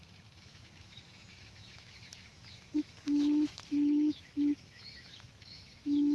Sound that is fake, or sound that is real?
fake